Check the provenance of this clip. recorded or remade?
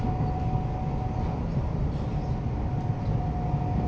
recorded